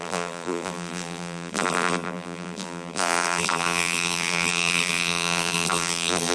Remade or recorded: remade